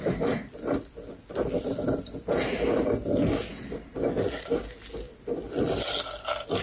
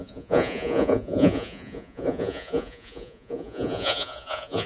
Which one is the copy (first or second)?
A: second